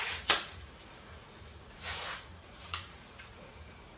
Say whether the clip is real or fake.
fake